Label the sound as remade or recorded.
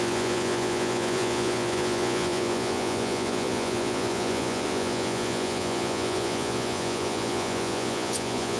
remade